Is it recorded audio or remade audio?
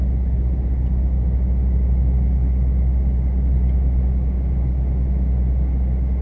recorded